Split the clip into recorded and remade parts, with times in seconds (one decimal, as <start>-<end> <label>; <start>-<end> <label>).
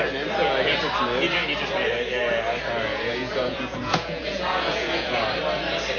0.0-2.9 recorded; 2.9-5.2 remade; 5.2-6.0 recorded